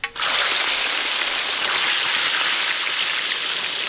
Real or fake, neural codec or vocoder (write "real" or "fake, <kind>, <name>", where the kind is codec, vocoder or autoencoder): real